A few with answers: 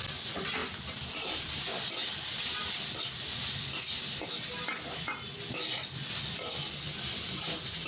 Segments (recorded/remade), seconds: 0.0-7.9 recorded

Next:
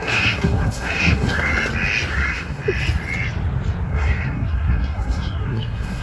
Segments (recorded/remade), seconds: 0.0-1.5 remade; 1.5-2.1 recorded; 2.1-2.6 remade; 2.6-3.9 recorded; 3.9-6.0 remade

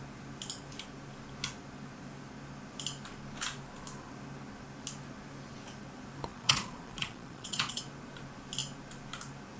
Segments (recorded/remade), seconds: 0.0-6.3 recorded; 6.3-7.8 remade; 7.8-9.6 recorded

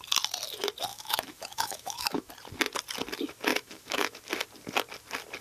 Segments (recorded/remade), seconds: 0.0-0.9 recorded; 0.9-2.3 remade; 2.3-3.5 recorded; 3.5-4.2 remade; 4.2-5.4 recorded